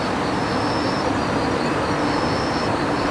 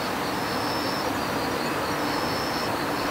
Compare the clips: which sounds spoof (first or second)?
first